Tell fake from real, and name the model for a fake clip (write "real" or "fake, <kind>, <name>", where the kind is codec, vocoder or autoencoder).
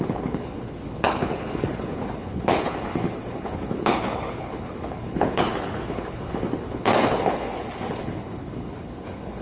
fake, codec, HILCodec